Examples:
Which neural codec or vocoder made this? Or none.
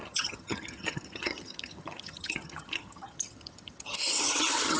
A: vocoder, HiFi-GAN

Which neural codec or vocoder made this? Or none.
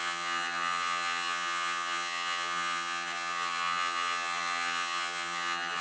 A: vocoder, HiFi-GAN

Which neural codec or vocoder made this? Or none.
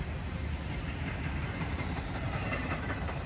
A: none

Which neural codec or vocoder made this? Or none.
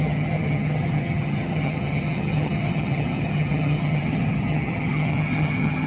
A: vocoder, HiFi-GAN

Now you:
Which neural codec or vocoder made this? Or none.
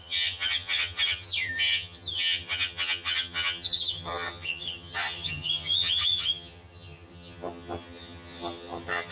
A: vocoder, HiFi-GAN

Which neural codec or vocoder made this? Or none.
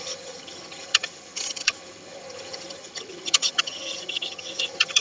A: vocoder, HiFi-GAN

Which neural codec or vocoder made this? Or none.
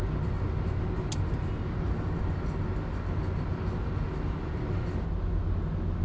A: none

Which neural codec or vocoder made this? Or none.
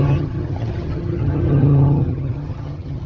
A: vocoder, HiFi-GAN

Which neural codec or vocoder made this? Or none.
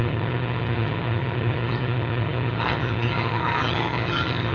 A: vocoder, HiFi-GAN